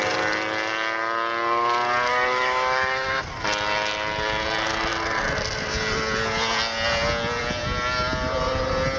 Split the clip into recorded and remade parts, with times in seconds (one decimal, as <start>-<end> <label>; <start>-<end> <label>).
0.0-2.1 recorded; 2.1-3.2 remade; 3.2-9.0 recorded